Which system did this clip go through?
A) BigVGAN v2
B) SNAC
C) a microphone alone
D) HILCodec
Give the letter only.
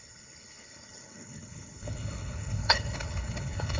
D